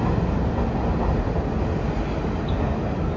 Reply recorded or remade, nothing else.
recorded